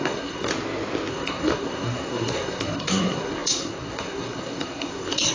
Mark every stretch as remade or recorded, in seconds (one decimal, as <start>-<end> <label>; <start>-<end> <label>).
0.0-0.5 remade; 0.5-1.1 recorded; 1.1-5.3 remade